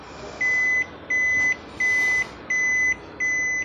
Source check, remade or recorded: recorded